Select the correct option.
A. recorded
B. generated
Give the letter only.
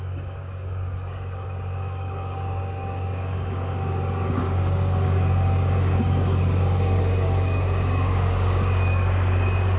B